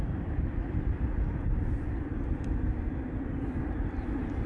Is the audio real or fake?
real